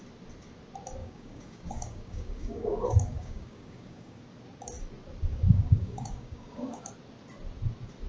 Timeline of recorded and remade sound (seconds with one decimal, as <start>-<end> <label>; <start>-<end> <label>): 0.0-1.0 recorded; 1.0-4.2 remade; 4.2-5.3 recorded; 5.3-6.9 remade; 6.9-8.1 recorded